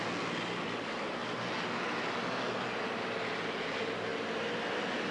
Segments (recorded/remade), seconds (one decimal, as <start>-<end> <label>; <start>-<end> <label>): 0.0-5.1 recorded